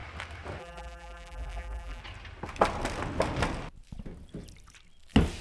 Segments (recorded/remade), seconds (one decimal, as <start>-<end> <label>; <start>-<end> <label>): 0.0-0.6 recorded; 0.6-2.0 remade; 2.0-5.4 recorded